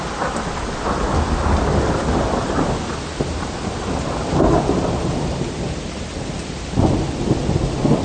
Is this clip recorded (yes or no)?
yes